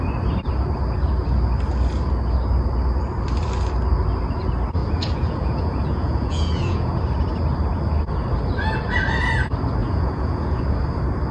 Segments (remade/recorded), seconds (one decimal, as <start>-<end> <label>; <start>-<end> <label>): 0.0-4.8 recorded; 4.8-7.0 remade; 7.0-9.8 recorded; 9.8-10.6 remade; 10.6-11.3 recorded